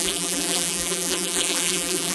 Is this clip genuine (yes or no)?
no